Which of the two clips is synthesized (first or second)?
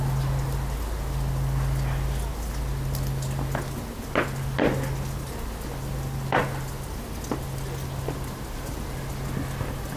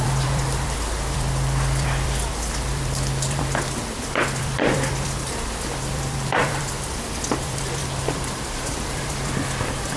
second